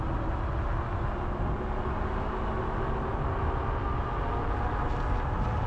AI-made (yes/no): no